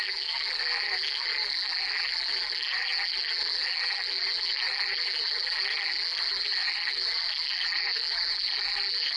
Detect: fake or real fake